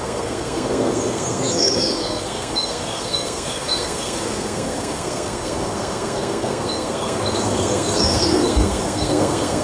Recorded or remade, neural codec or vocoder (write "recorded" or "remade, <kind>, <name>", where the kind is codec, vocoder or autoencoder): remade, codec, SNAC